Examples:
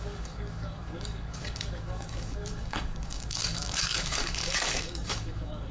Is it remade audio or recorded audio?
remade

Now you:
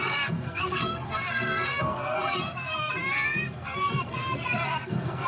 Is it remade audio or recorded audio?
remade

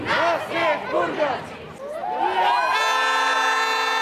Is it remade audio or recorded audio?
recorded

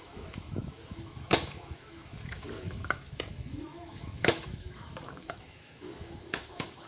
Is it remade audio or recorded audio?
remade